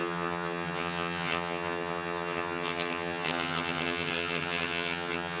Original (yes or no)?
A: no